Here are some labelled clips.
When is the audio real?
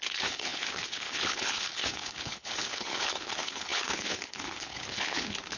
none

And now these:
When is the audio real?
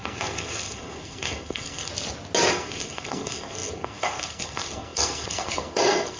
1.9-2.5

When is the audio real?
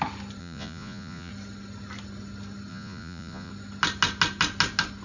0.0-0.4; 1.3-2.7; 3.5-5.0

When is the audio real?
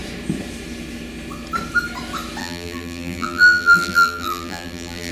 0.0-2.4